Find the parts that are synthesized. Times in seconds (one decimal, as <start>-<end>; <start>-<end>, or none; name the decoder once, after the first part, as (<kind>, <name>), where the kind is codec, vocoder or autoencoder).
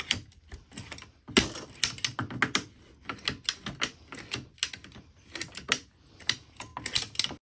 none